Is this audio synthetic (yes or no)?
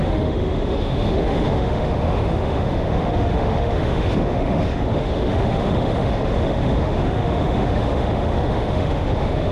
yes